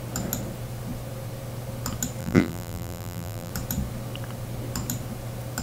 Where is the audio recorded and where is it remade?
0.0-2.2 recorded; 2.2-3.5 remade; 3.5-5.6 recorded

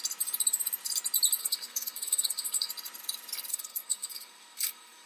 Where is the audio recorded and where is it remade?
0.0-1.4 recorded; 1.4-2.7 remade; 2.7-3.5 recorded; 3.5-5.1 remade

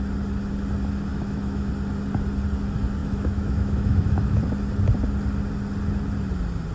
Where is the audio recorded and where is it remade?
0.0-1.1 recorded; 1.1-1.7 remade; 1.7-3.0 recorded; 3.0-4.4 remade; 4.4-6.7 recorded

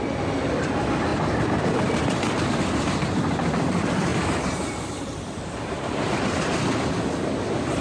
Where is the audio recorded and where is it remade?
0.0-4.1 recorded; 4.1-6.2 remade; 6.2-7.8 recorded

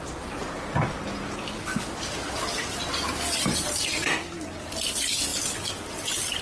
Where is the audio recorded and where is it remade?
0.0-0.4 recorded; 0.4-1.0 remade; 1.0-6.4 recorded

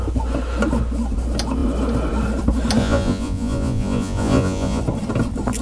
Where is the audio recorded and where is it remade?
0.0-2.8 recorded; 2.8-4.8 remade; 4.8-5.6 recorded

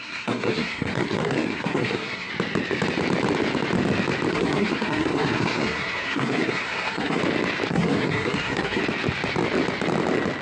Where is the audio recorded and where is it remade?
0.0-2.3 remade; 2.3-4.3 recorded; 4.3-7.2 remade; 7.2-7.7 recorded; 7.7-8.8 remade; 8.8-10.4 recorded

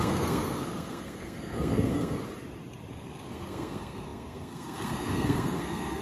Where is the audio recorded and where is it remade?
0.0-2.2 remade; 2.2-2.9 recorded; 2.9-6.0 remade